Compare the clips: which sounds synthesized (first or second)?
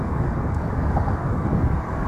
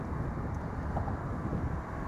first